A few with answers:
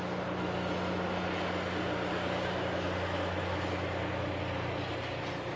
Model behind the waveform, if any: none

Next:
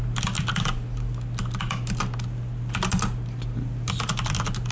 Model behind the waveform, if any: none